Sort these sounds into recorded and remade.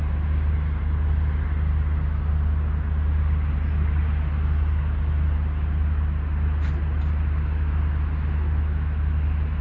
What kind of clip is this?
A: recorded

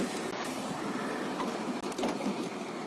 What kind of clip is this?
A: recorded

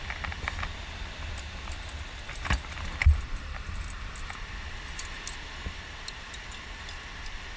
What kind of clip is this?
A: recorded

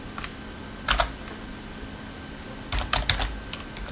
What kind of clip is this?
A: recorded